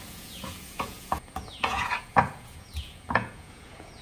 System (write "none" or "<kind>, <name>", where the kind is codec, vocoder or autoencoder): vocoder, Vocos